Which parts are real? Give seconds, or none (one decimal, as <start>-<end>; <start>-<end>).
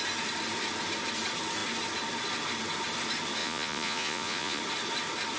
0.0-3.4; 4.6-5.4